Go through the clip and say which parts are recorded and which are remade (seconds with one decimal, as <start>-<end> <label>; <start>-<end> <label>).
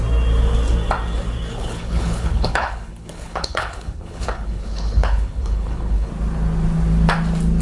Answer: 0.0-1.5 recorded; 1.5-6.1 remade; 6.1-7.6 recorded